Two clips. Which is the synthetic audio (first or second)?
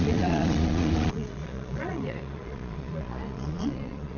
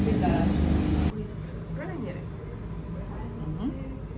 first